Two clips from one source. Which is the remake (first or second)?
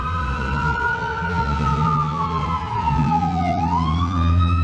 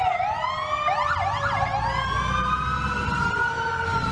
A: first